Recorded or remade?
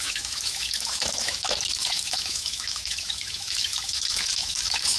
remade